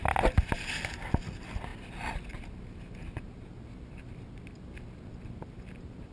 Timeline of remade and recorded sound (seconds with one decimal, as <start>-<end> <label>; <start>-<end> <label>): 0.0-6.1 recorded